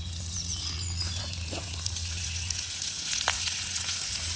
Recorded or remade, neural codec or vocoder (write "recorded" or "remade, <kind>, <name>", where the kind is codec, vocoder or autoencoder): remade, vocoder, Vocos